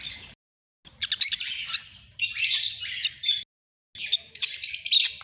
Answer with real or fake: real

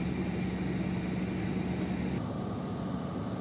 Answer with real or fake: real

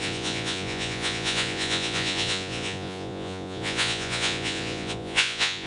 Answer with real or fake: fake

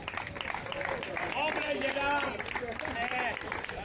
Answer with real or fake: real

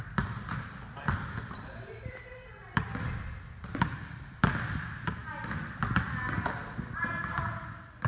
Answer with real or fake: real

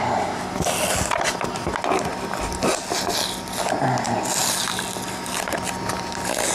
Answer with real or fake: real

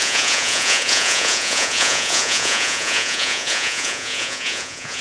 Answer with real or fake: fake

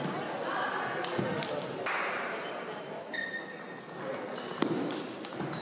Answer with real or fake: real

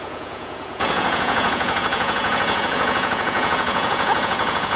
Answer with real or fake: fake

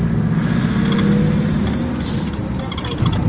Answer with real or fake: real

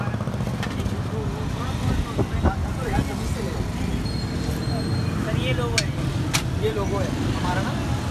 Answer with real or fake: real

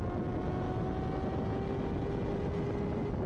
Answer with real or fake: real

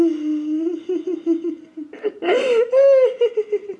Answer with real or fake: real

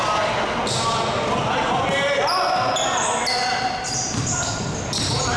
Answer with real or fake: real